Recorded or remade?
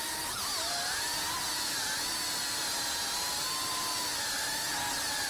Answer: recorded